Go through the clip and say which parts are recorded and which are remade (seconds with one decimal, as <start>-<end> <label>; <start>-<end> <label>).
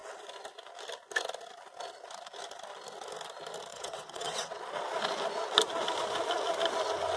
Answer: 0.0-3.7 recorded; 3.7-4.6 remade; 4.6-7.2 recorded